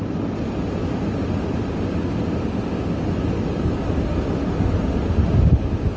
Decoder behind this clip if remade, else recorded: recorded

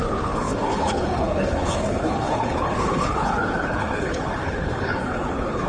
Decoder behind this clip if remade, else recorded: remade, codec, HILCodec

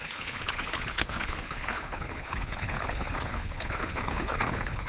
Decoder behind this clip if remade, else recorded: remade, codec, HILCodec